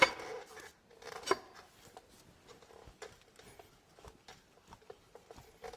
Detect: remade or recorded recorded